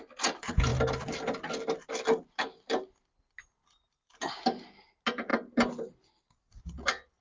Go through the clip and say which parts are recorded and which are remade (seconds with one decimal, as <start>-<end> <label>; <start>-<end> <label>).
0.0-7.2 recorded